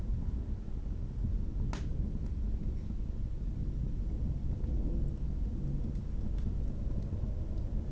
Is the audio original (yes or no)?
yes